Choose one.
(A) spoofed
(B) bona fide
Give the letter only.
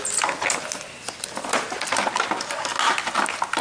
B